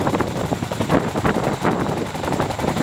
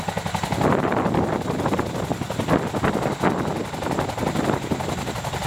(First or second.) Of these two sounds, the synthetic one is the first